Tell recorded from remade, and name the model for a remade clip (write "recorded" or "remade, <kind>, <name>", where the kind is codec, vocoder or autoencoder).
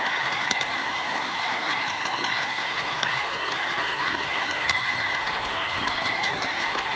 remade, codec, SNAC